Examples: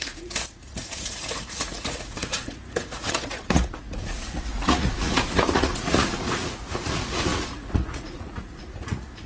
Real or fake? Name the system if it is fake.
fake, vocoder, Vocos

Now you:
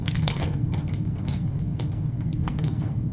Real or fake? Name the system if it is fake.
fake, codec, SNAC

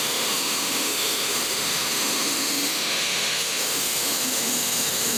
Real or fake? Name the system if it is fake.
fake, autoencoder, DAC-VAE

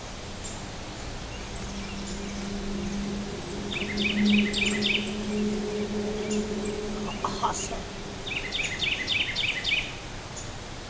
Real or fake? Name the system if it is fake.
real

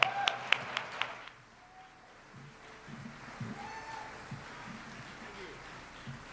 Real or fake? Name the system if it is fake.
real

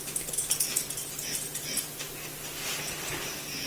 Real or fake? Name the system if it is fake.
real